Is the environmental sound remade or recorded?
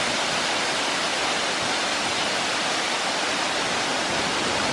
recorded